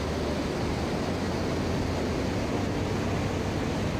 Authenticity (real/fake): real